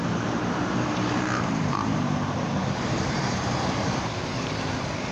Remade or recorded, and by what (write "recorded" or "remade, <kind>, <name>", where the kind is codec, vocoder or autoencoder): remade, vocoder, BigVGAN v2